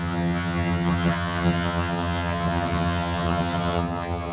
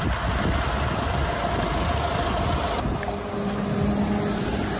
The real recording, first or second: second